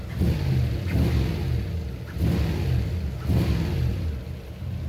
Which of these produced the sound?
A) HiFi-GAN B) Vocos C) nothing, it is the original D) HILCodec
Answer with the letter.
C